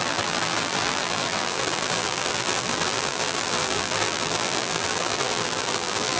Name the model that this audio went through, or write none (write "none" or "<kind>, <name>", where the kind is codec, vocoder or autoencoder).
vocoder, BigVGAN v2